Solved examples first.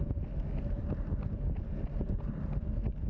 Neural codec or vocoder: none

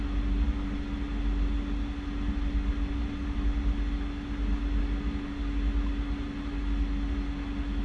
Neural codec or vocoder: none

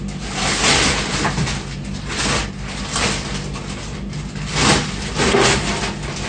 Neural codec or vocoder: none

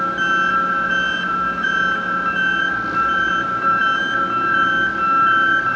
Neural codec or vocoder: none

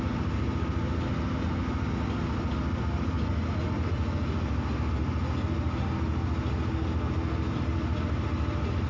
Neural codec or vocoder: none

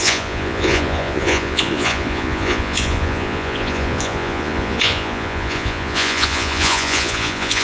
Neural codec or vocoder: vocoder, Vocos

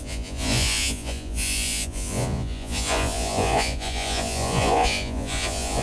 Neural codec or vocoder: vocoder, Vocos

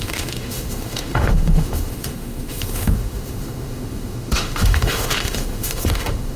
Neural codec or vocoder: autoencoder, DAC-VAE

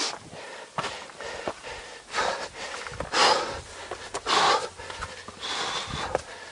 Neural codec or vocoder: vocoder, BigVGAN v2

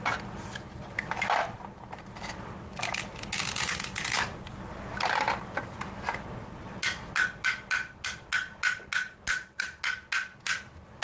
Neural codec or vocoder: none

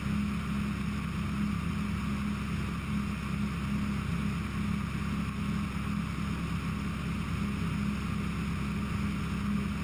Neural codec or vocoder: none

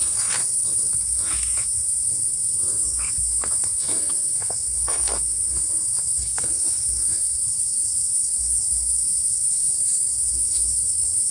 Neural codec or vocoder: codec, SNAC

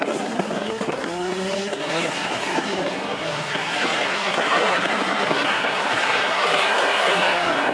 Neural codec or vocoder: codec, SNAC